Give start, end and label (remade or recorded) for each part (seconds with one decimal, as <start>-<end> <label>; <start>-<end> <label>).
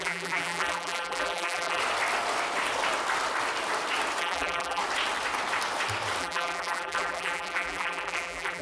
0.0-1.8 remade; 1.8-4.2 recorded; 4.2-4.8 remade; 4.8-6.2 recorded; 6.2-8.6 remade